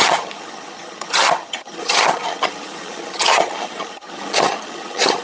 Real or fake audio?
fake